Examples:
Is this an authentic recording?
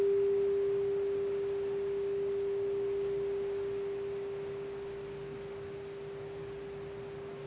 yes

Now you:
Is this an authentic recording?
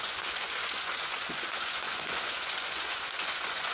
no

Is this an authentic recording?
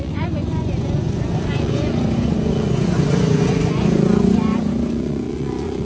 no